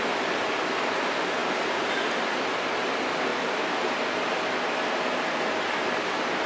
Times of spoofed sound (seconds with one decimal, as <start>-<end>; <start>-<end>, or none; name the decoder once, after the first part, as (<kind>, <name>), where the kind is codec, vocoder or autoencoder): none